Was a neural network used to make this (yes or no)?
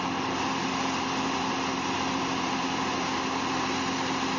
no